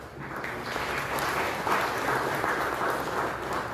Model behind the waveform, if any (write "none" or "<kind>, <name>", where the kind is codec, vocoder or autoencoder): none